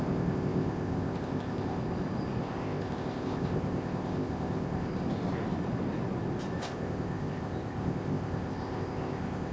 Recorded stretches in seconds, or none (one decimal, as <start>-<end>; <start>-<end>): 1.8-2.4; 4.9-6.6